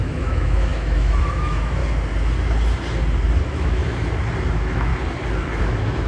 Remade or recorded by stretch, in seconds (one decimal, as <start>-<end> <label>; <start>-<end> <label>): 0.0-1.8 remade; 1.8-3.4 recorded; 3.4-3.8 remade; 3.8-4.5 recorded; 4.5-4.9 remade; 4.9-5.6 recorded; 5.6-6.1 remade